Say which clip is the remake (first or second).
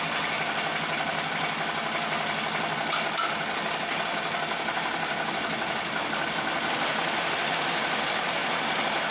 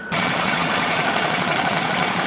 second